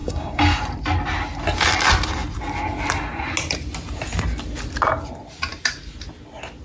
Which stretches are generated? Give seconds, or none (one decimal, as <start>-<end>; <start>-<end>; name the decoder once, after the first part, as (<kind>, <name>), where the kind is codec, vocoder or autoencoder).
0.0-0.6 (codec, DAC)